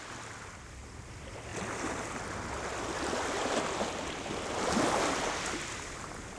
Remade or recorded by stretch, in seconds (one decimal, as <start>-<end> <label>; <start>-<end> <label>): 0.0-6.4 recorded